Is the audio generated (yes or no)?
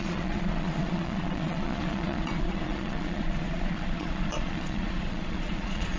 yes